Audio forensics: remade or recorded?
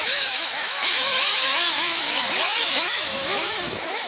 remade